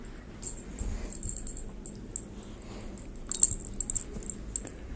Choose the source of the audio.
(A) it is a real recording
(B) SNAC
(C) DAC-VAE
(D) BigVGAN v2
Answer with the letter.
A